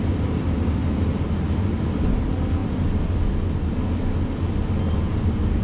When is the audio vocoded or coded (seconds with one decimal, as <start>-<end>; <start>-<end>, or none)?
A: none